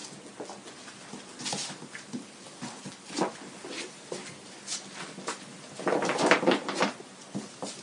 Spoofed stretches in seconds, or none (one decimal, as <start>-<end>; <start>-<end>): none